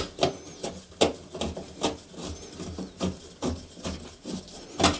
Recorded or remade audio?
recorded